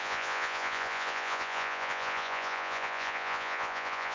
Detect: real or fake fake